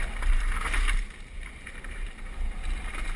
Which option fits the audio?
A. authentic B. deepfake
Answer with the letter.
B